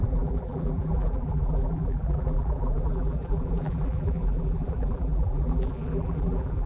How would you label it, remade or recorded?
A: remade